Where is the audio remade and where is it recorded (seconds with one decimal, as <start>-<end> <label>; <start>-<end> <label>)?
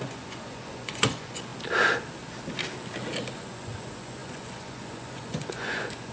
0.0-1.5 remade; 1.5-3.3 recorded; 3.3-6.1 remade